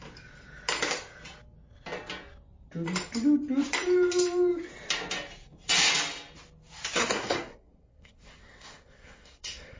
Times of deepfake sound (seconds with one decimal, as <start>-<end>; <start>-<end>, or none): 7.0-9.8